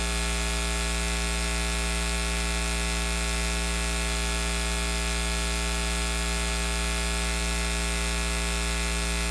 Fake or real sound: real